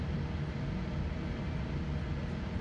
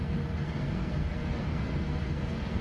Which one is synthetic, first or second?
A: second